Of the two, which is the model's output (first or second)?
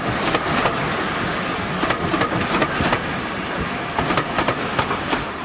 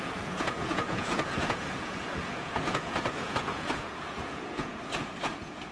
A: second